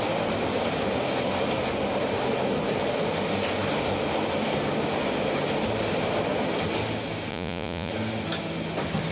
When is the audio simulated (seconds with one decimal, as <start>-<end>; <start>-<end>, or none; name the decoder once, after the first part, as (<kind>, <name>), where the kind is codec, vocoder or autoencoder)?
7.3-7.9 (vocoder, Vocos)

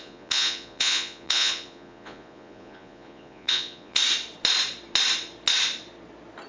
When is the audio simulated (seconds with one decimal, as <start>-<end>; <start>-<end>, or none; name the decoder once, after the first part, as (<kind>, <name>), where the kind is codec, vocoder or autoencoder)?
0.0-4.0 (vocoder, Vocos)

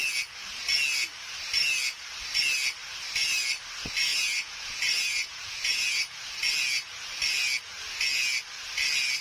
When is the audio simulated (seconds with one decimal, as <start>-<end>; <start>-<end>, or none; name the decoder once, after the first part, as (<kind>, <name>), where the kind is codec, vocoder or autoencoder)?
4.1-6.2 (vocoder, Vocos)

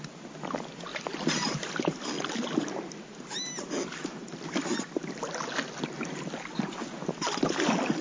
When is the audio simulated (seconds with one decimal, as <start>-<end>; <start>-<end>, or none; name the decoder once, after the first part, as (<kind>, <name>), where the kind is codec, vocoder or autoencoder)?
none

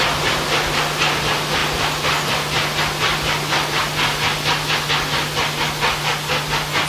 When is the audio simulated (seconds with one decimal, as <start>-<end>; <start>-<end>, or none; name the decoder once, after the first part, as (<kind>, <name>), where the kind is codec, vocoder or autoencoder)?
none

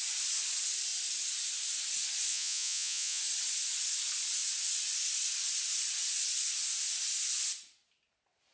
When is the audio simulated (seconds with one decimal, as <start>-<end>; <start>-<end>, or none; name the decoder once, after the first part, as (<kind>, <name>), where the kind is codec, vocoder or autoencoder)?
2.3-3.2 (vocoder, Vocos)